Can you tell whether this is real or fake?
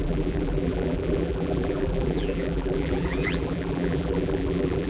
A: fake